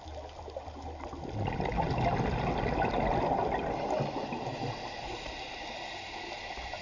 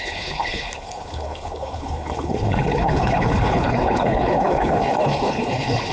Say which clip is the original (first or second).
first